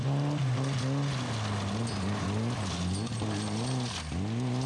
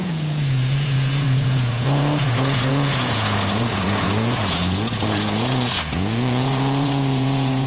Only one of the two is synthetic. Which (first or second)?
second